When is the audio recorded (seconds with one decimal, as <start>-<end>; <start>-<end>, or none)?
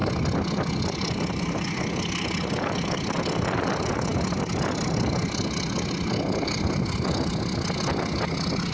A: 0.0-8.7